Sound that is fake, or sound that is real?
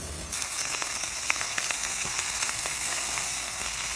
fake